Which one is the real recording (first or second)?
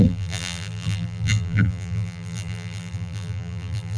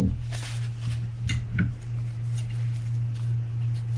second